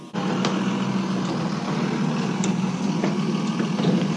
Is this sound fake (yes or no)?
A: no